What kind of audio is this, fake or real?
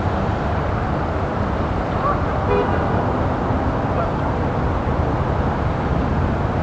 real